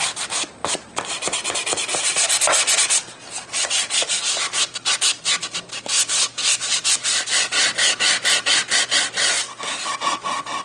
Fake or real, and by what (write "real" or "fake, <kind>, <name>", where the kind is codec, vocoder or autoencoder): real